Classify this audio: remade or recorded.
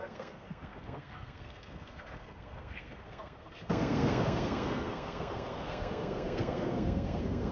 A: remade